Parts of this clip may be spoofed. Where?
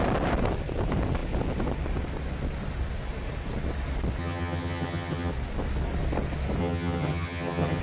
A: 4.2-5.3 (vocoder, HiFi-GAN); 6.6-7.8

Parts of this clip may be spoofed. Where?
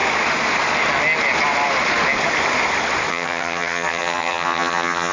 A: 3.1-5.1 (vocoder, HiFi-GAN)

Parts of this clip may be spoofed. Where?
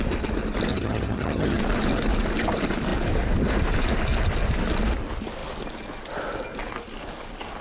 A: 0.7-1.6 (vocoder, HiFi-GAN)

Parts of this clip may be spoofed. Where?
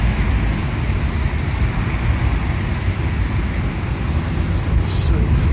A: none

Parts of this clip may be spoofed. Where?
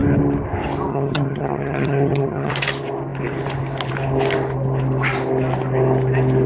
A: 0.9-2.5 (vocoder, HiFi-GAN)